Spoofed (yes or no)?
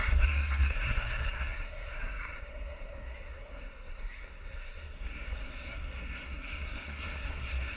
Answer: yes